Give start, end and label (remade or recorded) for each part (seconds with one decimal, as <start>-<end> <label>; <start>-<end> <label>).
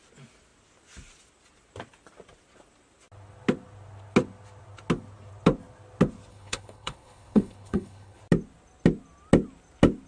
0.0-6.3 recorded; 6.3-8.2 remade; 8.2-10.1 recorded